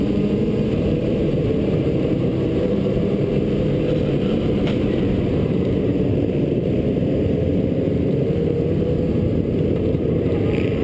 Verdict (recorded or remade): remade